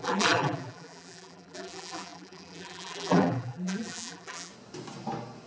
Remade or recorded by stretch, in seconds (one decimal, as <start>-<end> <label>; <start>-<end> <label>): 0.0-4.5 remade; 4.5-5.5 recorded